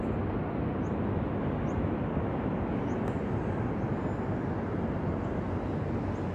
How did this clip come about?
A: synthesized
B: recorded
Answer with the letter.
B